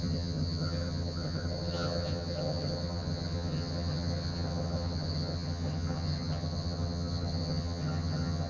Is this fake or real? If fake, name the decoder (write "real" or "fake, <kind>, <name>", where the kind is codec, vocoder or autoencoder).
fake, vocoder, HiFi-GAN